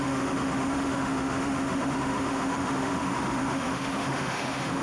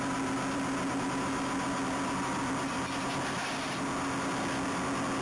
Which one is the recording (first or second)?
second